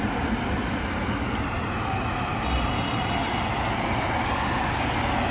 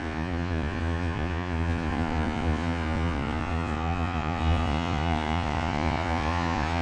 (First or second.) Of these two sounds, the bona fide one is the first